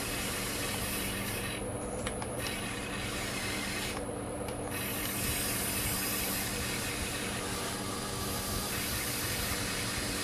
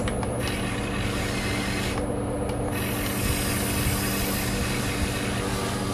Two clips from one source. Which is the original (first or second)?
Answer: second